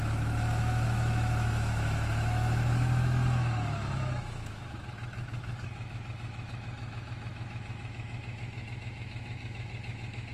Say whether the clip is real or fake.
fake